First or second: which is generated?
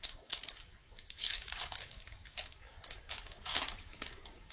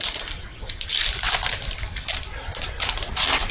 first